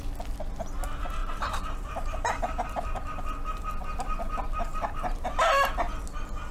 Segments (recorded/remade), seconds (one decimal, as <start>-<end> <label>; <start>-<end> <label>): 0.0-1.2 recorded; 1.2-3.8 remade; 3.8-4.7 recorded; 4.7-5.4 remade; 5.4-6.5 recorded